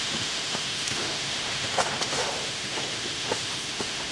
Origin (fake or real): fake